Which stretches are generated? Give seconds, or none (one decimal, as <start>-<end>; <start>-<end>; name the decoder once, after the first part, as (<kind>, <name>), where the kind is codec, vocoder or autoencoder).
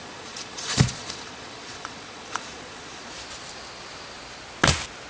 0.0-3.1 (vocoder, Vocos)